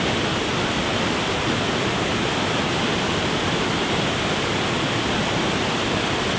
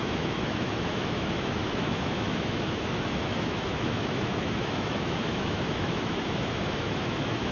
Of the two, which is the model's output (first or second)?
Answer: second